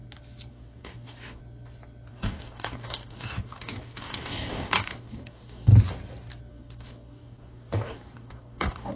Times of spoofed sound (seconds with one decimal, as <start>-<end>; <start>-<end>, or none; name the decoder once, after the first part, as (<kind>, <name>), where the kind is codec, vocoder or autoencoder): 0.5-1.4 (codec, DAC); 2.1-5.7; 6.5-8.9